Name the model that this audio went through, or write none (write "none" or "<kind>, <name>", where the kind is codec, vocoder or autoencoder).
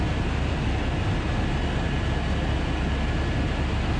none